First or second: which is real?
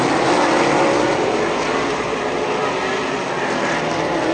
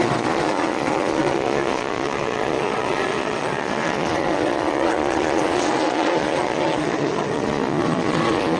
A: first